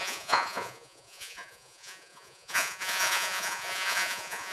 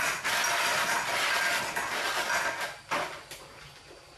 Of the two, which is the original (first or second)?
second